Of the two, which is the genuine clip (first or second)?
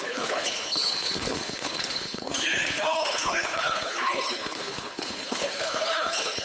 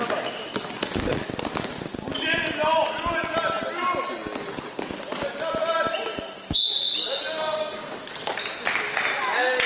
second